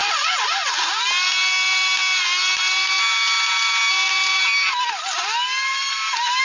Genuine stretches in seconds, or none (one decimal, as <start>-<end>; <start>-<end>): 1.1-5.7